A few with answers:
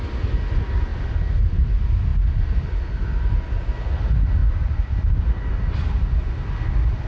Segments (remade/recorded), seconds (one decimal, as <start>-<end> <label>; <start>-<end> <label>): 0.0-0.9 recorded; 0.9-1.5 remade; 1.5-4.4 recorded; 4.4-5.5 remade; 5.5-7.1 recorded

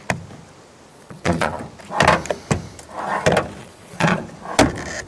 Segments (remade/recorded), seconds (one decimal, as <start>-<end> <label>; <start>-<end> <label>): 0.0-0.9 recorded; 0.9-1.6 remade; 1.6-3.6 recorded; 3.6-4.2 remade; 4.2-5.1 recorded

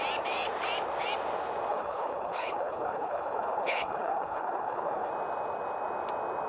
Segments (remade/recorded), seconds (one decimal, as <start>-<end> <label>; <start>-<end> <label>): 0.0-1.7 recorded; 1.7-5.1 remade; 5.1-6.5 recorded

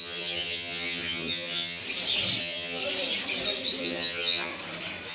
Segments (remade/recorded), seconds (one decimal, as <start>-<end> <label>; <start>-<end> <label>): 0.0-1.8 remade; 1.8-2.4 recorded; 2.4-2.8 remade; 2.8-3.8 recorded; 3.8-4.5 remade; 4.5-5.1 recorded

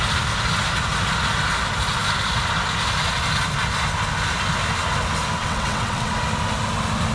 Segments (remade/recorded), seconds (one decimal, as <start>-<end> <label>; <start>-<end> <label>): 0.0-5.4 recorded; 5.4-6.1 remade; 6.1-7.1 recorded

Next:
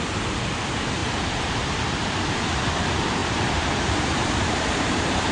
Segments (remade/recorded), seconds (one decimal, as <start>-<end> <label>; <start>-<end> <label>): 0.0-3.2 recorded; 3.2-5.3 remade

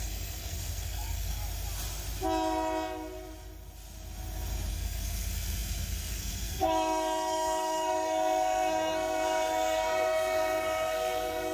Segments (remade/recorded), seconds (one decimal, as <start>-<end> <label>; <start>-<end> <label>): 0.0-1.4 remade; 1.4-4.7 recorded; 4.7-11.5 remade